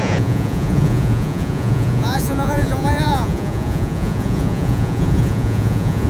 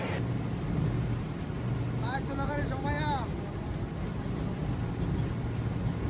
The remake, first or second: first